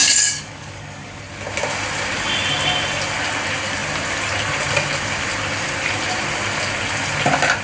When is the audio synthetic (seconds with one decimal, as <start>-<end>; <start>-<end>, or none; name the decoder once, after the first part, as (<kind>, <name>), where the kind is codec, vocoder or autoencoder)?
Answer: 0.0-1.2 (codec, DAC)

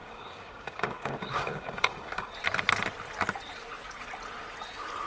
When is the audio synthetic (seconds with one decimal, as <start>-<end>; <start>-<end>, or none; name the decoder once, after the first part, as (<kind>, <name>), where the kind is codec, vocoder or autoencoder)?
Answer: 0.0-2.3 (codec, DAC)

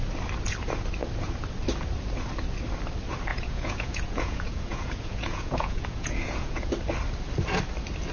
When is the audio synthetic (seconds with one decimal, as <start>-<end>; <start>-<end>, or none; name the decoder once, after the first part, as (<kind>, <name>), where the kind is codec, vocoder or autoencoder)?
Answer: 3.3-6.7 (vocoder, Vocos)